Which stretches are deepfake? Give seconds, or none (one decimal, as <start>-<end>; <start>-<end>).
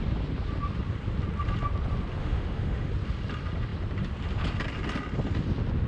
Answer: 2.2-2.9